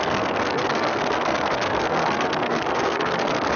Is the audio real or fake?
fake